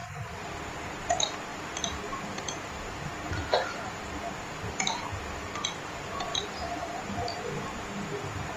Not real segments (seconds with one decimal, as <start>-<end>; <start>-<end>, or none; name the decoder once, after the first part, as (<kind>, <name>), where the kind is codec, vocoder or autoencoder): 1.5-4.7 (vocoder, BigVGAN v2); 6.3-7.0